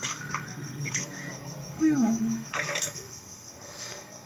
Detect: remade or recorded remade